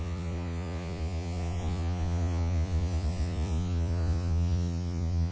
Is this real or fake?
fake